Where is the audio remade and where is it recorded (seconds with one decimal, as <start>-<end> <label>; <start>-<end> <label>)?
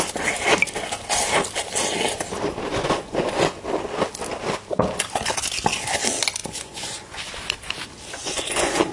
0.0-2.7 recorded; 2.7-3.6 remade; 3.6-6.4 recorded; 6.4-7.3 remade; 7.3-8.2 recorded; 8.2-8.9 remade